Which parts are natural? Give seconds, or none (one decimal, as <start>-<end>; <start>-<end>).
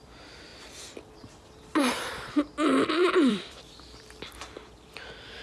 0.0-0.5; 2.3-3.0; 4.4-5.4